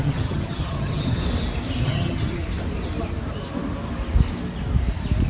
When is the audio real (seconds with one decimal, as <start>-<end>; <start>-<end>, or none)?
1.2-1.8; 2.4-5.3